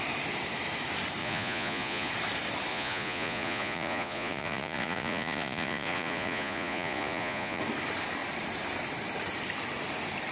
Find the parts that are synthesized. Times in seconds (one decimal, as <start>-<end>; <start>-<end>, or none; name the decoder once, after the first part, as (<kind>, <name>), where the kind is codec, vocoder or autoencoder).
1.2-2.1 (vocoder, Vocos); 2.7-7.6